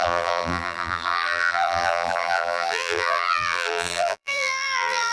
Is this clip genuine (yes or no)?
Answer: no